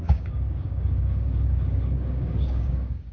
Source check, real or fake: fake